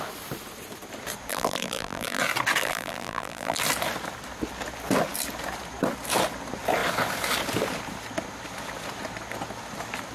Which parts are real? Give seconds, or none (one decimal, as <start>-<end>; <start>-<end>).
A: 0.0-1.3; 2.2-2.6; 3.6-10.1